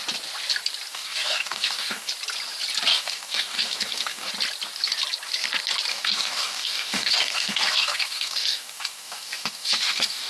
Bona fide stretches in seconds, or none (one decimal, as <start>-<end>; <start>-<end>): 0.0-0.9; 2.1-2.9; 4.3-5.9